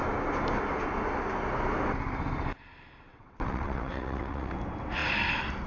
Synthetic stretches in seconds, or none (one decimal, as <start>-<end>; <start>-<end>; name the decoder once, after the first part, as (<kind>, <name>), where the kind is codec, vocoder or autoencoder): 3.1-4.5 (vocoder, WaveNeXt)